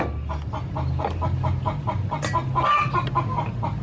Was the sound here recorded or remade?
recorded